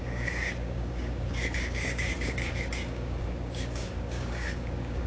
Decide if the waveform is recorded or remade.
remade